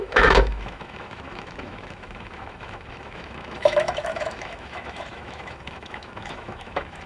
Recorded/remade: remade